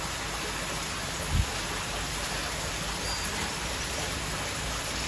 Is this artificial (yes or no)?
no